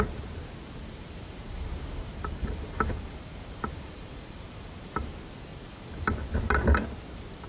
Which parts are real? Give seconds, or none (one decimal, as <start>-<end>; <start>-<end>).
0.0-0.6; 5.1-5.5; 6.2-7.5